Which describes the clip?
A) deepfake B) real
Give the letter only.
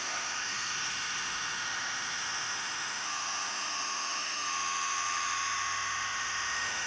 A